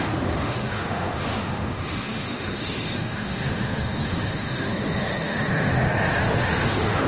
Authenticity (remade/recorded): remade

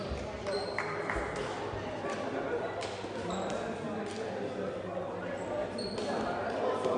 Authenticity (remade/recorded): recorded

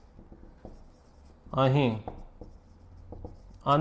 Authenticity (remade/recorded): recorded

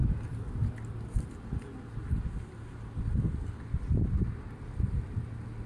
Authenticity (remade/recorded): recorded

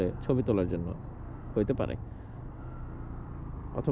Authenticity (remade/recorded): recorded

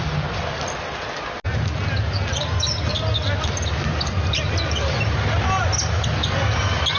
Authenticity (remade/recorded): recorded